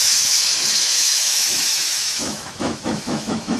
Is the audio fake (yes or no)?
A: yes